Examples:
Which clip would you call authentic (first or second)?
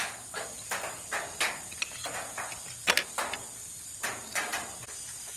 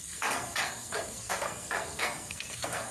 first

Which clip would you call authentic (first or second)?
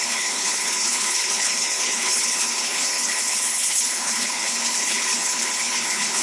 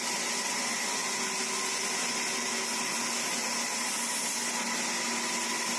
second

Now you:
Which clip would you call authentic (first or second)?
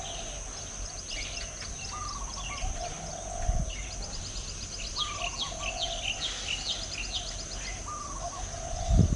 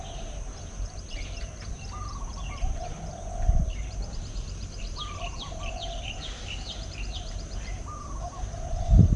first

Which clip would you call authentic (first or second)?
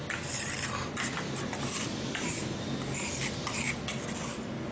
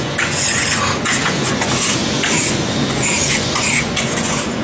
first